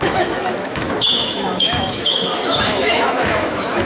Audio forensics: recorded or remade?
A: remade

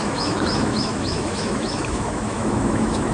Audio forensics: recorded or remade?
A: remade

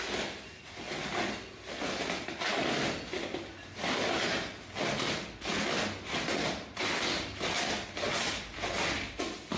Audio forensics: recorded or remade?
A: recorded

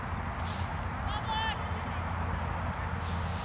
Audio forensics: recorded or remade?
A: recorded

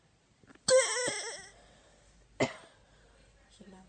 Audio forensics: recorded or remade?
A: recorded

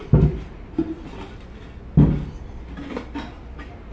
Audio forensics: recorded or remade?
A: recorded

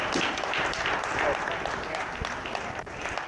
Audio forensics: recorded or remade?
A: recorded